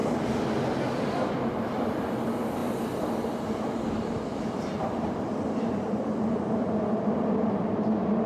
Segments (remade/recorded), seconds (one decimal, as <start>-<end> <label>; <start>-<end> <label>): 0.0-1.0 recorded; 1.0-8.3 remade